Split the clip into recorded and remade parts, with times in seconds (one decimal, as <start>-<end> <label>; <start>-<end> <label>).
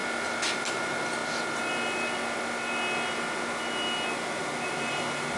0.0-0.7 recorded; 0.7-1.2 remade; 1.2-4.4 recorded; 4.4-5.4 remade